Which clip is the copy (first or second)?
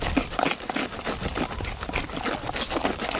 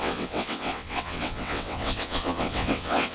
second